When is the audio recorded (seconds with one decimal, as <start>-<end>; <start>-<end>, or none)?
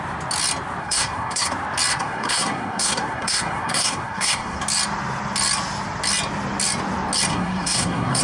0.0-0.8; 1.5-1.9; 4.6-7.3